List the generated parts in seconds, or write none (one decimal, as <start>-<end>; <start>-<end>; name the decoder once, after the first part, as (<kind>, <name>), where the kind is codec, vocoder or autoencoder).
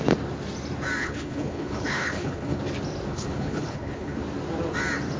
1.0-2.6 (codec, HILCodec); 3.1-4.2